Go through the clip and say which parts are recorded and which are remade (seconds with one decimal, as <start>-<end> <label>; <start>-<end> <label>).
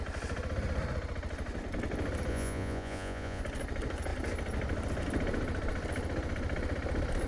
0.0-2.3 recorded; 2.3-3.4 remade; 3.4-7.3 recorded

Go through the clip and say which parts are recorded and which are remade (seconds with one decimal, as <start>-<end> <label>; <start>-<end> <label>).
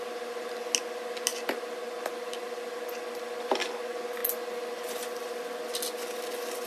0.0-6.7 recorded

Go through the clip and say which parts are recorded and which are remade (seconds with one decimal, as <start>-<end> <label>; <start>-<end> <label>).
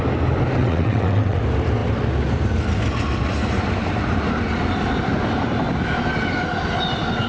0.0-0.6 recorded; 0.6-1.4 remade; 1.4-7.3 recorded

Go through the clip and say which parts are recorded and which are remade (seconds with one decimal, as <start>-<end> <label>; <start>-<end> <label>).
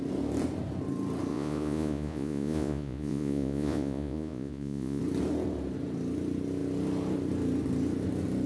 0.0-1.3 recorded; 1.3-5.0 remade; 5.0-8.5 recorded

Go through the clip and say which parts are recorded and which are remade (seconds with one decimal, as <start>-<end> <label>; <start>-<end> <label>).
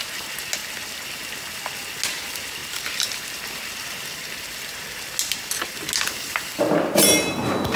0.0-7.8 recorded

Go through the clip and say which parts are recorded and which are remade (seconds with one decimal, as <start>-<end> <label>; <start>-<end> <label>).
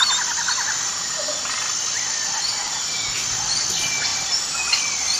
0.0-5.2 recorded